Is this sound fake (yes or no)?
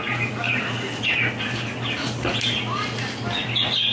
no